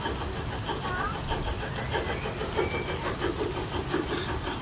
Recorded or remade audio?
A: recorded